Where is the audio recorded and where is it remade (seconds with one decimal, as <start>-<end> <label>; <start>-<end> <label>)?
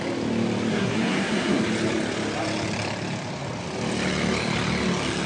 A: 0.0-0.7 recorded; 0.7-1.6 remade; 1.6-5.3 recorded